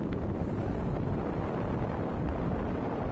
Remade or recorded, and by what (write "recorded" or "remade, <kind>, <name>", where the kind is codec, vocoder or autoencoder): recorded